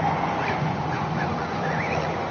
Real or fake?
fake